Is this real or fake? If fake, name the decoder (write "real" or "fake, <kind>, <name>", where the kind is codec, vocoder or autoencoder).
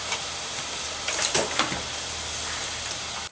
real